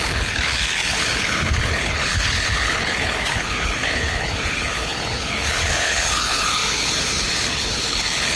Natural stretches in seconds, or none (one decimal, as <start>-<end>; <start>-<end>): none